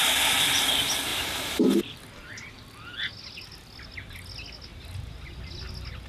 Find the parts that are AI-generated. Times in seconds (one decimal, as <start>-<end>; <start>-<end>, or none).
1.1-1.8